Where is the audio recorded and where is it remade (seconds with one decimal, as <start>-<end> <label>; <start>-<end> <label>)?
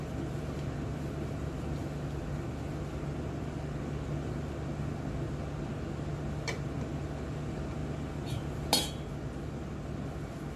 0.0-10.6 recorded